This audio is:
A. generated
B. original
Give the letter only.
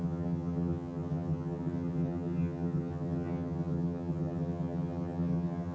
A